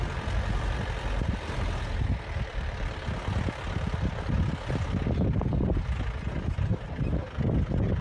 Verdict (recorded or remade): recorded